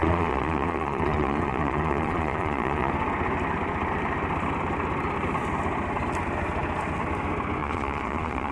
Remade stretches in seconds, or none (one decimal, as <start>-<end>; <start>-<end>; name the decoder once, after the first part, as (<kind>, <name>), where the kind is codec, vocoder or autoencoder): 0.0-2.9 (vocoder, Vocos); 7.6-8.5